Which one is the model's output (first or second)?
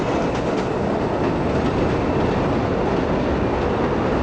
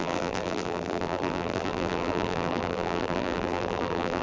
second